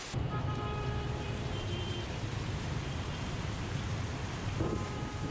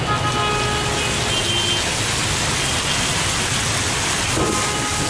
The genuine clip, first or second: second